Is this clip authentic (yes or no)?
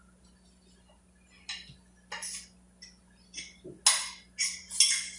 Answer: yes